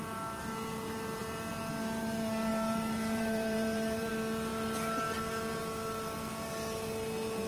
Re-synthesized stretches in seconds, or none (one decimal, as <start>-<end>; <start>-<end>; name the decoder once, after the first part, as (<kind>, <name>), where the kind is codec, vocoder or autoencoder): 2.5-4.1 (vocoder, BigVGAN v2)